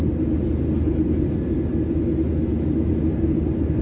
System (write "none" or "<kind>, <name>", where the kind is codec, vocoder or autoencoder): none